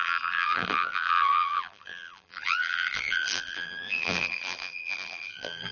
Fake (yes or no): yes